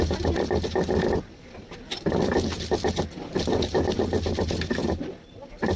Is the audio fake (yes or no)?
no